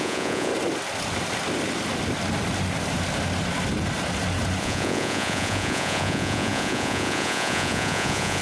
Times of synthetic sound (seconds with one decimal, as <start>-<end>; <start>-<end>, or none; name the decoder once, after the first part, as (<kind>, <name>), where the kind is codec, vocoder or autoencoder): 0.0-0.5 (vocoder, Vocos); 4.6-8.4